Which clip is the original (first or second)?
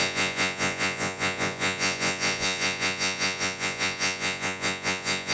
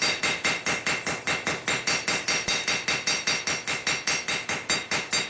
second